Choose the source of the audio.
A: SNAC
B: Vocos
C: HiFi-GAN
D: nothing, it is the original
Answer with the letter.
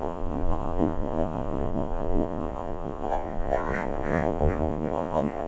B